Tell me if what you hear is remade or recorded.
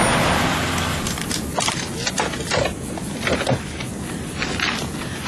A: recorded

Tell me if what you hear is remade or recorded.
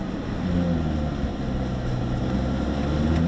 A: recorded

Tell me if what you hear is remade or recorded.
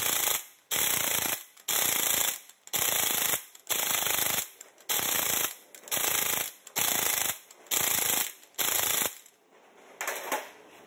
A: recorded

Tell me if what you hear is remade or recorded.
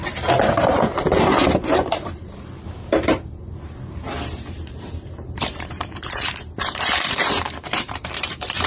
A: remade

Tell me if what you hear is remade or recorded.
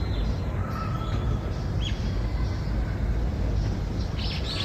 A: recorded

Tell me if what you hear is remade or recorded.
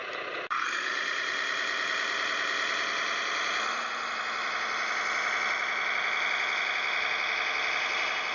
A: recorded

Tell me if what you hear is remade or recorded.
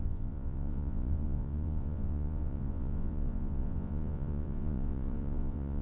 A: remade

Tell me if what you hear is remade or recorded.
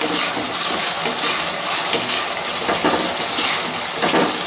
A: recorded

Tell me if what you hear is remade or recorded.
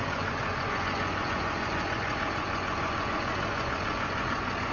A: remade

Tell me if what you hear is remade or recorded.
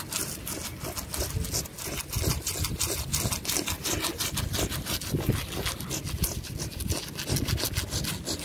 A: recorded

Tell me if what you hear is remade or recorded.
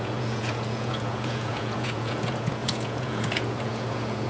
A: remade